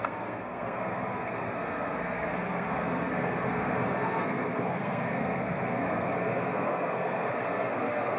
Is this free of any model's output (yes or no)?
no